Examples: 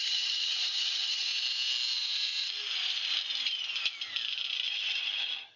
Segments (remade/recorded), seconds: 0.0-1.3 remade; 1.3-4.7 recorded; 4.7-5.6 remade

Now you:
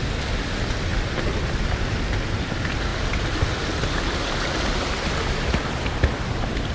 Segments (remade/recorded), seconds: 0.0-0.9 recorded; 0.9-2.0 remade; 2.0-2.9 recorded; 2.9-4.0 remade; 4.0-6.7 recorded

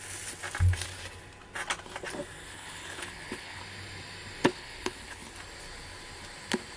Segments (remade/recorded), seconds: 0.0-2.5 recorded; 2.5-3.6 remade; 3.6-4.5 recorded; 4.5-5.3 remade; 5.3-6.8 recorded

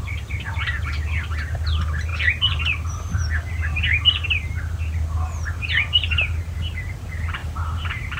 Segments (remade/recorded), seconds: 0.0-7.4 recorded; 7.4-8.2 remade

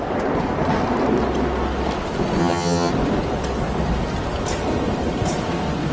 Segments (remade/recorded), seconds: 0.0-2.4 recorded; 2.4-2.9 remade; 2.9-5.9 recorded

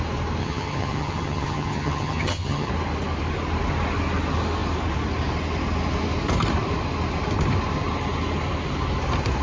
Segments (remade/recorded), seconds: 0.0-0.4 recorded; 0.4-2.7 remade; 2.7-9.4 recorded

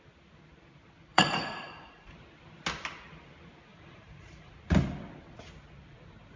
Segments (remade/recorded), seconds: 0.0-1.1 recorded; 1.1-2.1 remade; 2.1-3.7 recorded; 3.7-4.5 remade; 4.5-6.4 recorded